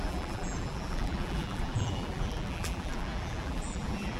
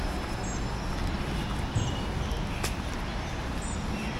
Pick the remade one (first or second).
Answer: first